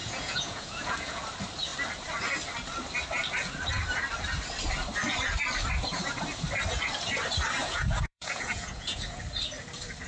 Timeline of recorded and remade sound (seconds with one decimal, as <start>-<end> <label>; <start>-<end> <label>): 0.0-1.2 remade; 1.2-7.6 recorded; 7.6-9.2 remade; 9.2-10.1 recorded